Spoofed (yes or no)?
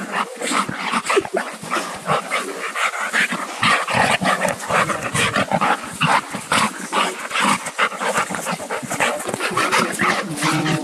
yes